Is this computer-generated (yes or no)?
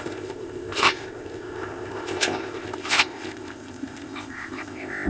yes